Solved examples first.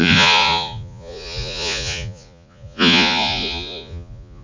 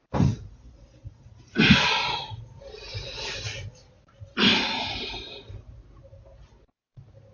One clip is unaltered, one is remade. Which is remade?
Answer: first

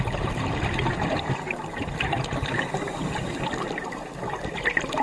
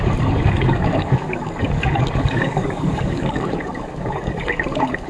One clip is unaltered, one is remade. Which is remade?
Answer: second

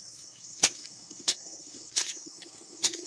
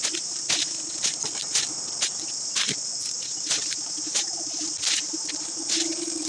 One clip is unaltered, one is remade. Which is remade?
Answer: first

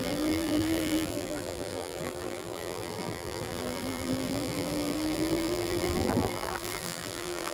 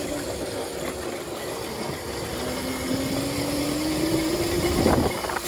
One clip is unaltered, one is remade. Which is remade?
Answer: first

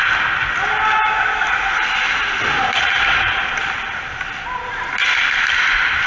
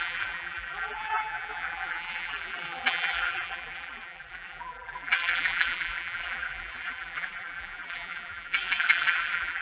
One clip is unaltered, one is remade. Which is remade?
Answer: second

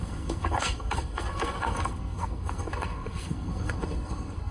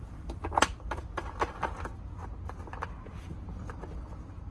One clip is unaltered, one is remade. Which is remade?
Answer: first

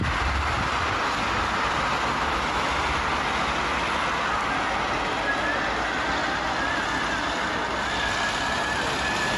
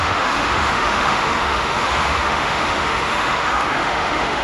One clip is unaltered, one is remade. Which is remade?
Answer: second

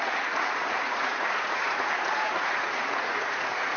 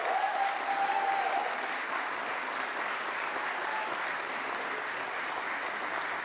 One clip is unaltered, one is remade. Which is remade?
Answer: first